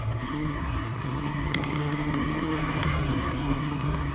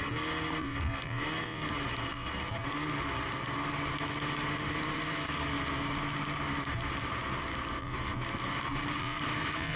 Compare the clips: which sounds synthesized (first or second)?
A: first